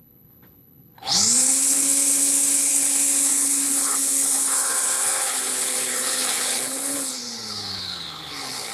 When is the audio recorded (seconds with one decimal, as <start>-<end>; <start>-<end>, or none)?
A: none